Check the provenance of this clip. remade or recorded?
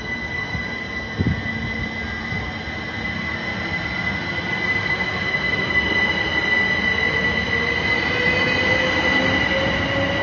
recorded